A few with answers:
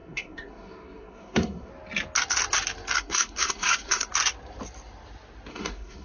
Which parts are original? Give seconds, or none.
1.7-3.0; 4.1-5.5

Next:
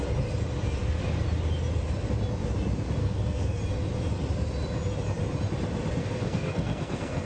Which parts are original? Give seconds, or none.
0.0-3.0; 3.6-6.0

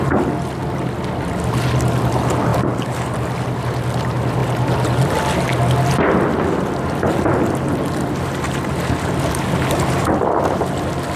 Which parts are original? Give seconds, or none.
0.0-11.2